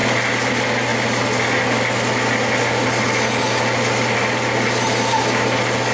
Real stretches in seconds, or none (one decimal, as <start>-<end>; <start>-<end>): 0.0-5.9